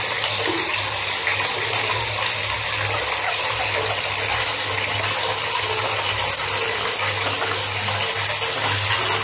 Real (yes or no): yes